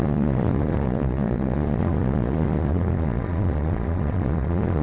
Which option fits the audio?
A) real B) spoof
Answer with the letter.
B